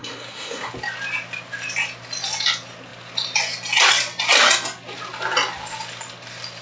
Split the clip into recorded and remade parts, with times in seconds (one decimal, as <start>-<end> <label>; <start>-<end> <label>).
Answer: 0.0-0.7 remade; 0.7-6.6 recorded